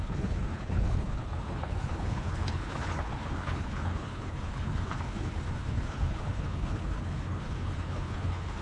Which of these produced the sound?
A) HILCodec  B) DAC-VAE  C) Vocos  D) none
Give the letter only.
A